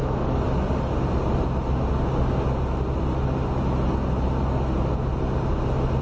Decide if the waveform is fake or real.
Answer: real